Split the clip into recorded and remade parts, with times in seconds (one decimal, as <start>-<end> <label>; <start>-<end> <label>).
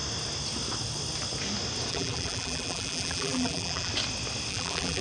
0.0-1.9 recorded; 1.9-3.9 remade; 3.9-4.5 recorded; 4.5-5.0 remade